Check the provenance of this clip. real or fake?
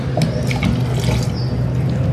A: real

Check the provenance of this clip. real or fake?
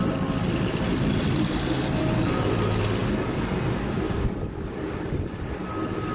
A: real